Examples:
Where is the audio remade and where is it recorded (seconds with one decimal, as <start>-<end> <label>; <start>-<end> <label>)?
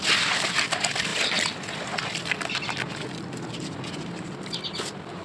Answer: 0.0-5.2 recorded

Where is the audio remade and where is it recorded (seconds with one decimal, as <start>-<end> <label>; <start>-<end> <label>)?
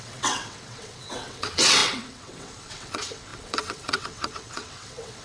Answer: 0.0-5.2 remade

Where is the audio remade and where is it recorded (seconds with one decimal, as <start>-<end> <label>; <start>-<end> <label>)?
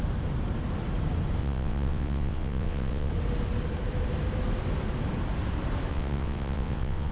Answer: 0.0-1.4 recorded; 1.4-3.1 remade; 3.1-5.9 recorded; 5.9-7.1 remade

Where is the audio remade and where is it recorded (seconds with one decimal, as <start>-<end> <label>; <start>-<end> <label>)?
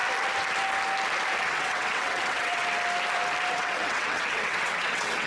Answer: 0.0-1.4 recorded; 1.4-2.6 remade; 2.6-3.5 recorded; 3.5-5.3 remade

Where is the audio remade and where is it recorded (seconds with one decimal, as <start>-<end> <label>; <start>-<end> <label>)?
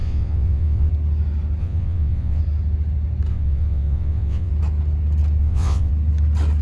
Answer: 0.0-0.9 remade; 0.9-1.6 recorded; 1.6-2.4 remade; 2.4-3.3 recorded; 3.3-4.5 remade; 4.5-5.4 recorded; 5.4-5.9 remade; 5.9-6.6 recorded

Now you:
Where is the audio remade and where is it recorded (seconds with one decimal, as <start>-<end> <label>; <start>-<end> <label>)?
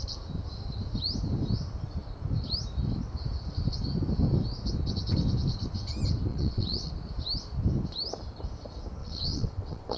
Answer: 0.0-6.3 recorded; 6.3-6.9 remade; 6.9-9.0 recorded; 9.0-10.0 remade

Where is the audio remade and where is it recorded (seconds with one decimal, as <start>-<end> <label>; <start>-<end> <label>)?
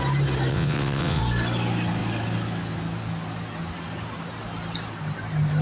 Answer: 0.0-0.5 recorded; 0.5-1.2 remade; 1.2-5.6 recorded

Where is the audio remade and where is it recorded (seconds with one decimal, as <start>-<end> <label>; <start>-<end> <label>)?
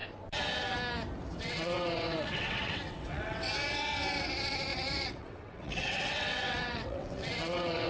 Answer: 0.0-1.4 recorded; 1.4-7.9 remade